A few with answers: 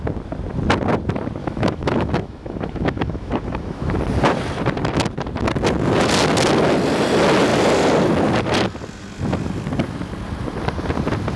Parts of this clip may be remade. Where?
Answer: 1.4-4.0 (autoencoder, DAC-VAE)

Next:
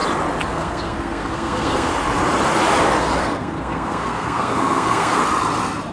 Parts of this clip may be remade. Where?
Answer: 0.5-1.9 (codec, SNAC); 3.2-5.2

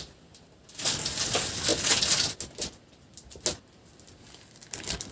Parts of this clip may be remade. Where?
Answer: none

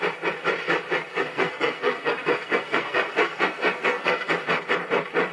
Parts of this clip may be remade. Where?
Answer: 1.1-4.3 (codec, SNAC)